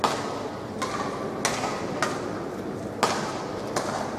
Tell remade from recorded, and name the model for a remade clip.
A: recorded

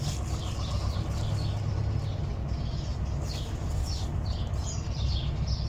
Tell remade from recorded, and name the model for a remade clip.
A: recorded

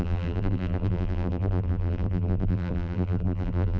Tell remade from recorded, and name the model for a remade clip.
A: remade, vocoder, BigVGAN v2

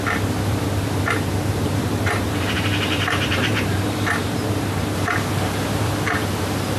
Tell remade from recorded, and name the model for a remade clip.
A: remade, vocoder, BigVGAN v2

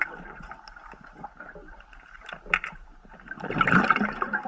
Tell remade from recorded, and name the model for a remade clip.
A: recorded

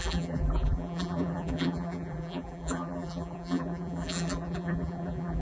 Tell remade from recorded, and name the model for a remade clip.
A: remade, vocoder, BigVGAN v2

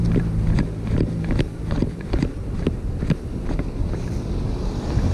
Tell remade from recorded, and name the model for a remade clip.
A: recorded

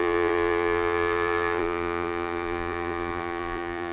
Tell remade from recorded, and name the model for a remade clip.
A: remade, vocoder, BigVGAN v2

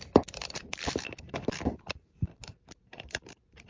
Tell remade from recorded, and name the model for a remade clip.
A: remade, vocoder, BigVGAN v2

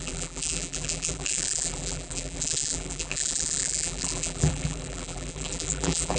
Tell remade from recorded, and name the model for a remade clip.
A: remade, vocoder, BigVGAN v2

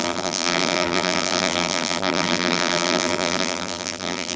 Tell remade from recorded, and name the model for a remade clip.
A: remade, vocoder, BigVGAN v2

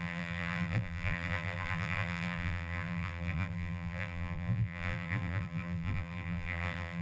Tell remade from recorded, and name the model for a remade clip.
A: remade, vocoder, BigVGAN v2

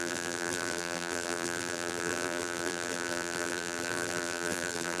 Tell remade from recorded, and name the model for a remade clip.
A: remade, vocoder, BigVGAN v2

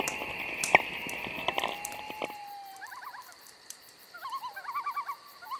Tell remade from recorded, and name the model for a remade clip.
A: remade, vocoder, BigVGAN v2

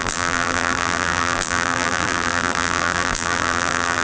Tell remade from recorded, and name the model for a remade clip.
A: remade, vocoder, BigVGAN v2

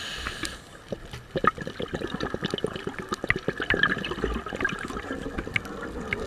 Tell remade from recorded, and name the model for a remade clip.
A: recorded